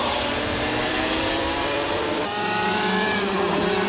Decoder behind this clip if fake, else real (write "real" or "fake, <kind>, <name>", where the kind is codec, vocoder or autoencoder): fake, vocoder, BigVGAN v2